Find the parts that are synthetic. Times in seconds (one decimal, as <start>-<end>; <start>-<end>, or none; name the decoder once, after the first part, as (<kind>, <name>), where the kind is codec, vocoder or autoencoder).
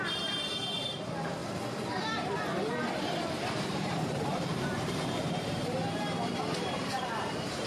0.0-1.4 (vocoder, BigVGAN v2); 3.5-4.7; 5.5-7.7